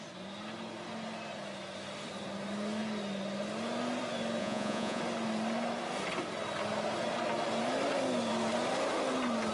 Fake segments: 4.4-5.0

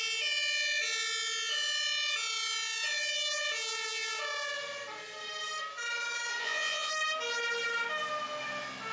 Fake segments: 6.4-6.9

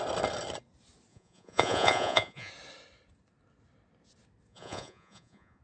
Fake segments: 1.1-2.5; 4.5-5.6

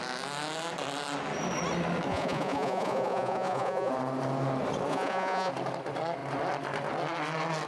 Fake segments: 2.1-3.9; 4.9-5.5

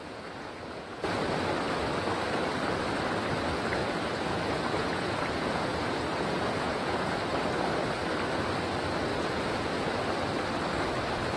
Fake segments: 0.0-1.2; 3.8-7.1; 9.1-9.9

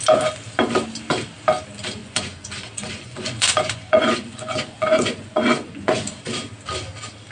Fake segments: 2.0-6.2

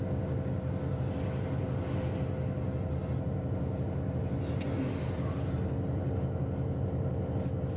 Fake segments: none

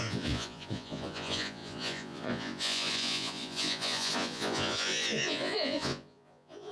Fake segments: 0.0-6.7